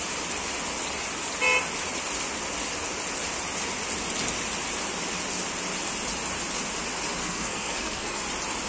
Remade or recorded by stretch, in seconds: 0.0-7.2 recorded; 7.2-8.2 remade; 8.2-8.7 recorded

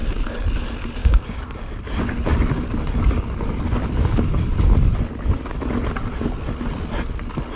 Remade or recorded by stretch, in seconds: 0.0-1.0 recorded; 1.0-1.8 remade; 1.8-7.6 recorded